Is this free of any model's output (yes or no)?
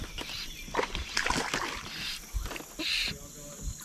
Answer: yes